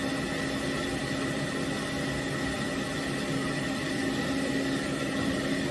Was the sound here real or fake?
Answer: real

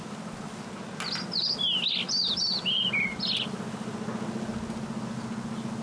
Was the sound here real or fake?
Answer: real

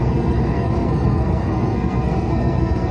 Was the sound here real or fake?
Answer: fake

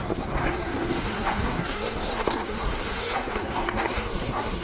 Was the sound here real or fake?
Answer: fake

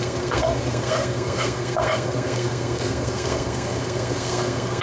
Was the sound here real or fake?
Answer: fake